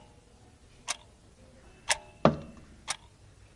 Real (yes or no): yes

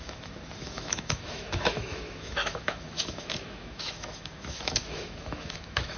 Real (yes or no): no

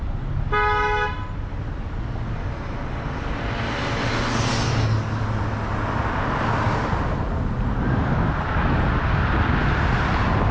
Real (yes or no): yes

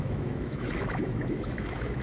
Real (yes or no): no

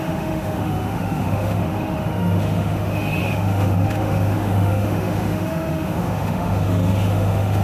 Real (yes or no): no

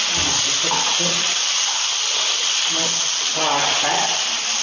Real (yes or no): yes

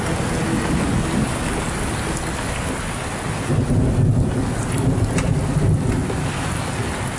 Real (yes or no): yes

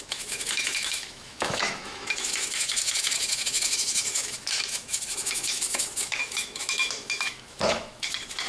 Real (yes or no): no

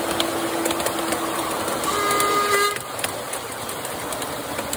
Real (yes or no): yes